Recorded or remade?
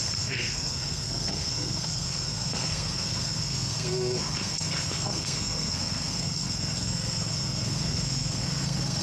remade